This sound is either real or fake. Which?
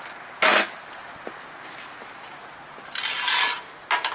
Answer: real